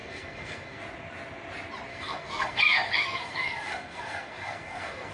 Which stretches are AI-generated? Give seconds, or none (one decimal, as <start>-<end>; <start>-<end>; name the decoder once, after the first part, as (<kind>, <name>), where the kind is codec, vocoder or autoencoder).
0.0-0.8 (codec, SNAC); 1.9-5.1